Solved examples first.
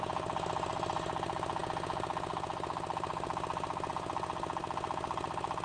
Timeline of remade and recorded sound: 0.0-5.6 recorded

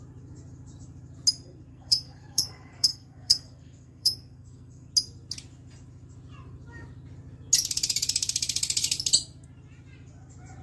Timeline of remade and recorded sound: 0.0-1.7 recorded; 1.7-4.9 remade; 4.9-10.6 recorded

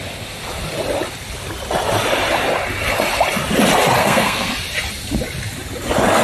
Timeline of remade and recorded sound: 0.0-4.0 recorded; 4.0-4.5 remade; 4.5-6.2 recorded

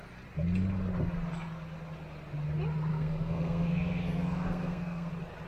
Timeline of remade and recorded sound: 0.0-2.9 recorded; 2.9-5.1 remade; 5.1-5.5 recorded

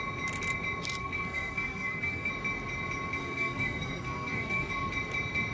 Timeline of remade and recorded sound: 0.0-1.0 recorded; 1.0-2.3 remade; 2.3-3.2 recorded; 3.2-4.7 remade; 4.7-5.5 recorded

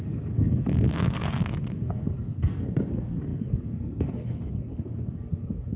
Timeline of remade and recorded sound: 0.0-5.8 remade